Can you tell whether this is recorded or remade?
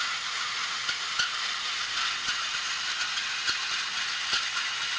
recorded